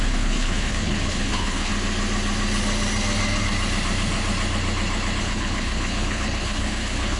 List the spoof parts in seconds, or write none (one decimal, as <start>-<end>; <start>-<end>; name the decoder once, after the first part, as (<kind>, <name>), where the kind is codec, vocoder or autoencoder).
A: 0.0-1.7 (codec, HILCodec); 5.2-7.2